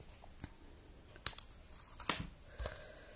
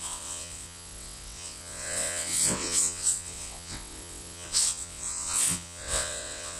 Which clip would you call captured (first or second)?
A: first